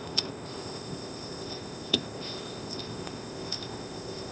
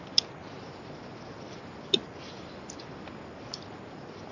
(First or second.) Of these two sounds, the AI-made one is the first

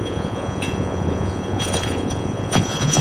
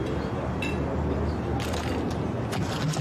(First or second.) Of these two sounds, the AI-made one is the first